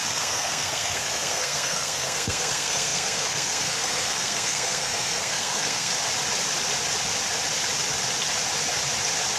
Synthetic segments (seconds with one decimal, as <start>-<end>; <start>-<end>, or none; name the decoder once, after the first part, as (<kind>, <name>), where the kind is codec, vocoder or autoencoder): 0.0-5.9 (codec, SNAC)